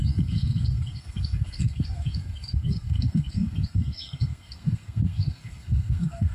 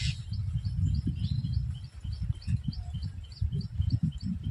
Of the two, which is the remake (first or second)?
first